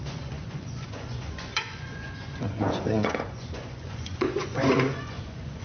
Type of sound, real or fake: fake